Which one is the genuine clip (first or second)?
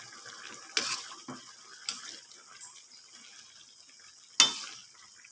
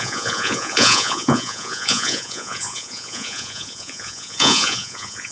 first